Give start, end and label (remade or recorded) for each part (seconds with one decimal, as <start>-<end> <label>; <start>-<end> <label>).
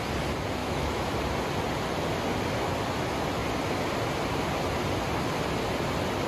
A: 0.0-0.6 recorded; 0.6-1.1 remade; 1.1-6.3 recorded